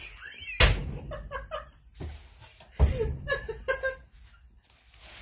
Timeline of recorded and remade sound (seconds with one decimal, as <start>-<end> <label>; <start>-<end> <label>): 0.0-5.2 recorded